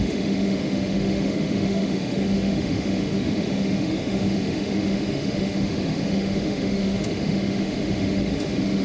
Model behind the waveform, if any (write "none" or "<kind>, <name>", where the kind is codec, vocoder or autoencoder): autoencoder, DAC-VAE